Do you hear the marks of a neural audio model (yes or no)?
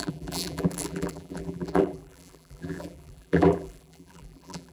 yes